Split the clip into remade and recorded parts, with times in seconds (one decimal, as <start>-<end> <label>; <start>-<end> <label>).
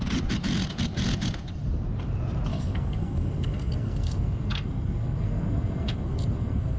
0.0-2.5 recorded; 2.5-6.8 remade